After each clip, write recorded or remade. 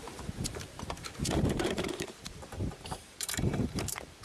remade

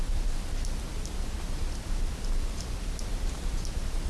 recorded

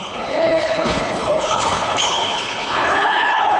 remade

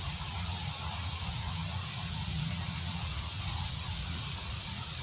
remade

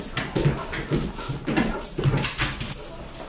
recorded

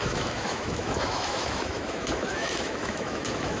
remade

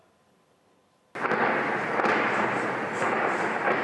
recorded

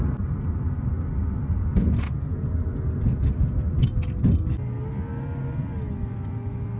recorded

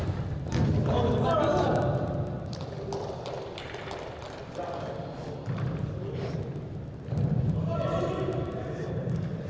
recorded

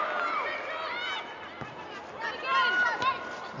recorded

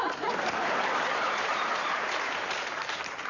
remade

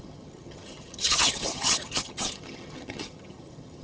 remade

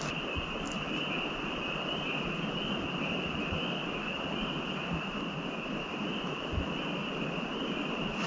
recorded